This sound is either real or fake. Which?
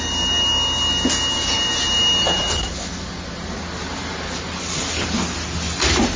real